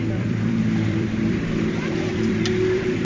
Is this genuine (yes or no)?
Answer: no